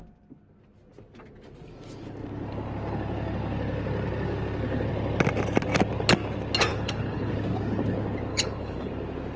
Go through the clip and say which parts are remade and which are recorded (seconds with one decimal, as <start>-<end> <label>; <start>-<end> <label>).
0.0-6.7 recorded; 6.7-7.3 remade; 7.3-8.3 recorded; 8.3-8.9 remade; 8.9-9.4 recorded